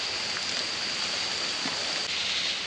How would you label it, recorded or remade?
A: recorded